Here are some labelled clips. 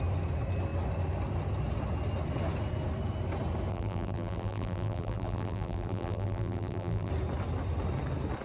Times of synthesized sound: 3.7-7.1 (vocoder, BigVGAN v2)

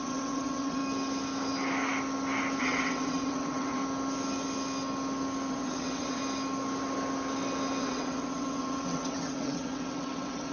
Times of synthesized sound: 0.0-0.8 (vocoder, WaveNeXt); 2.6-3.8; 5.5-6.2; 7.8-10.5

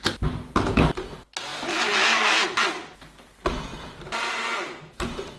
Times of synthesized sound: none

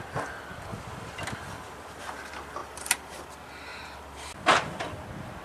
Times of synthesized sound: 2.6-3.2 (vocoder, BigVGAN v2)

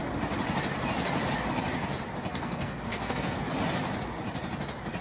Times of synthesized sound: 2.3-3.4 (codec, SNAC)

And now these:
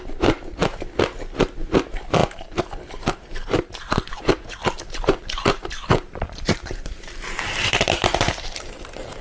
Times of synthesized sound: 0.0-0.6 (vocoder, BigVGAN v2); 1.7-9.2

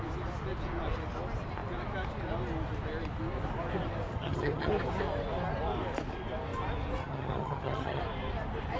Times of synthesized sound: 4.1-4.7 (vocoder, HiFi-GAN); 7.0-8.0

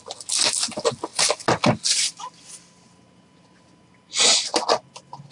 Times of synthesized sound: none